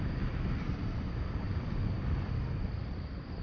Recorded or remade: recorded